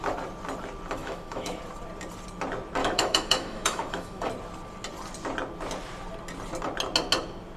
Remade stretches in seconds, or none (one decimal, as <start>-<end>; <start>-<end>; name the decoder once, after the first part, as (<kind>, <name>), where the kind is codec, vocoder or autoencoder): 1.0-1.6 (autoencoder, DAC-VAE); 2.8-4.3